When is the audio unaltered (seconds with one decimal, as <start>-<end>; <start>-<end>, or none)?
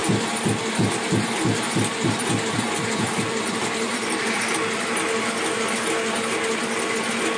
4.4-7.4